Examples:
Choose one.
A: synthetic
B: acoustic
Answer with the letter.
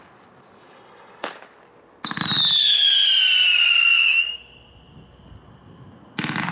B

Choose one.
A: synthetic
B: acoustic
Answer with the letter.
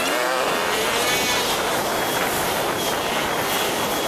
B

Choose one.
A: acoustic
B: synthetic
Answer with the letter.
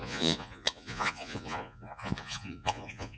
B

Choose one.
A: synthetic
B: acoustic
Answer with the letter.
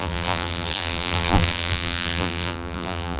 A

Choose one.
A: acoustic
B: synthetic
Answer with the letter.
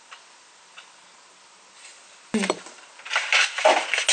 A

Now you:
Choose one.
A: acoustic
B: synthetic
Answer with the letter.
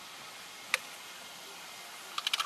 A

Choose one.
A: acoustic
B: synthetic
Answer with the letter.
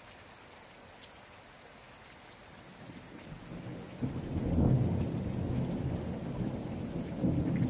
A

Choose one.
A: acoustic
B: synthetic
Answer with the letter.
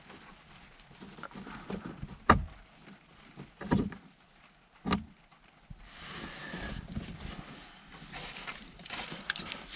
A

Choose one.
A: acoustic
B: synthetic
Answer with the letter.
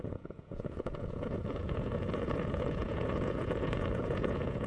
B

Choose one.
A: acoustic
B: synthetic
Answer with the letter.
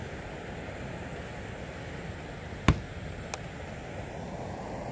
A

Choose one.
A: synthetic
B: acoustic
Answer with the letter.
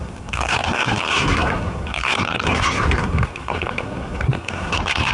A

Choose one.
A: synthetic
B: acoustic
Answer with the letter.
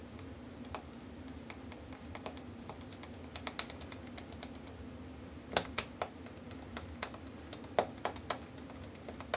B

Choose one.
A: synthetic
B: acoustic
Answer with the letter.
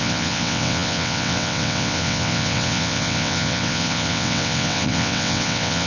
A